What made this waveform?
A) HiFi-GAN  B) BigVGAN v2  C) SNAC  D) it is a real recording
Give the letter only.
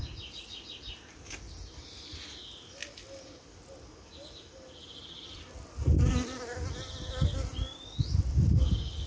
D